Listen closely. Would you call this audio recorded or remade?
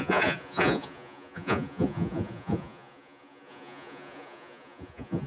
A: remade